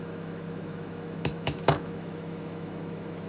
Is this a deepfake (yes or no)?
yes